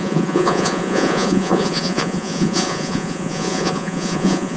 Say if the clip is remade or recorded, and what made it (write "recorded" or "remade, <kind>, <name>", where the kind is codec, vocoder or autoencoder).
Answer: remade, vocoder, Vocos